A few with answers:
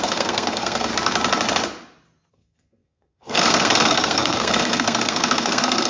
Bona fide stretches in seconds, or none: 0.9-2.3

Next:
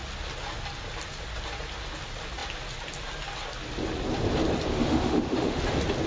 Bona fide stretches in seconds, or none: 0.0-4.7; 5.6-6.1

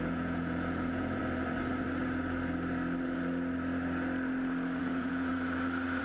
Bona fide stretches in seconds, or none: 1.2-4.8; 5.3-6.0

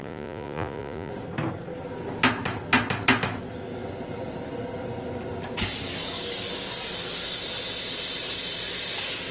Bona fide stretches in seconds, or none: 1.1-9.3

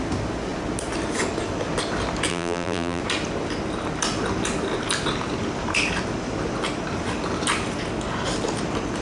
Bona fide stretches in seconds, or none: 0.0-2.3; 3.0-9.0

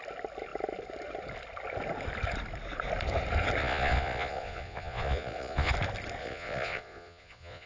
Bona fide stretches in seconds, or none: 0.0-3.6; 5.7-6.2

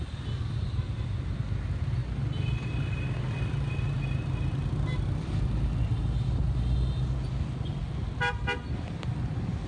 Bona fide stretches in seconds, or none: 0.0-9.7